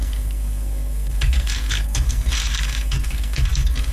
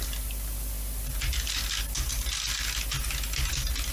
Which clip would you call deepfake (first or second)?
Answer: first